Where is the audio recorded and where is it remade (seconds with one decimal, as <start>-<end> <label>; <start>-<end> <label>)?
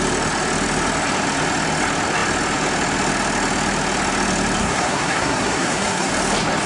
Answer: 0.0-4.6 recorded; 4.6-6.1 remade; 6.1-6.7 recorded